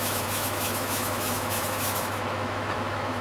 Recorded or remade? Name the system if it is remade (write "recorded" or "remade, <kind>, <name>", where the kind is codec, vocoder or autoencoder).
remade, autoencoder, DAC-VAE